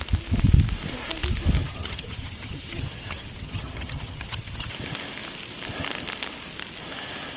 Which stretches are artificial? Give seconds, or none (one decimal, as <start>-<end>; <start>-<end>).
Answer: 1.6-4.7